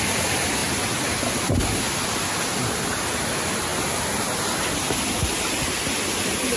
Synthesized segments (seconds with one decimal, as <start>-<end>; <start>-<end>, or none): none